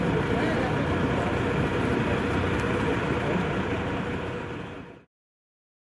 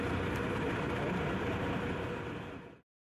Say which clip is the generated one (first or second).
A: first